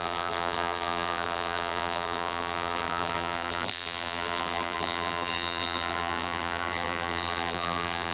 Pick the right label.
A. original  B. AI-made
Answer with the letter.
B